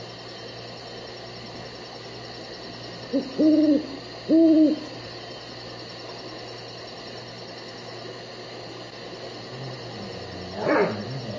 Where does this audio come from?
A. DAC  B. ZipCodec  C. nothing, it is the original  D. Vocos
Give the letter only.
C